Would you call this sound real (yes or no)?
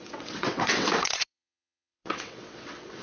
no